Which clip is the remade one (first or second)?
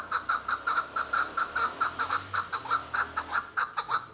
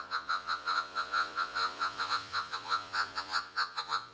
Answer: second